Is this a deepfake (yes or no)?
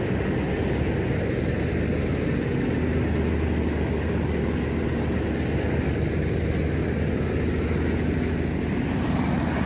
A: no